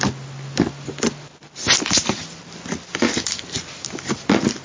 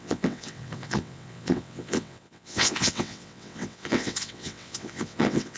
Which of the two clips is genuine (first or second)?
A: first